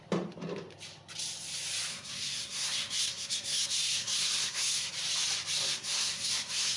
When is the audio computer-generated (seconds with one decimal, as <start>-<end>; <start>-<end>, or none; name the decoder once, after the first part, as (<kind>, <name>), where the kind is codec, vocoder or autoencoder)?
1.9-4.9 (codec, SNAC); 5.6-6.8